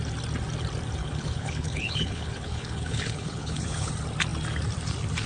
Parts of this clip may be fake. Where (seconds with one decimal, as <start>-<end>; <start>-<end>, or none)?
1.0-3.9